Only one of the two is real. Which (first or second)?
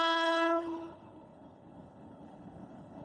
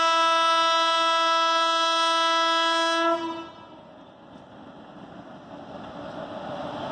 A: second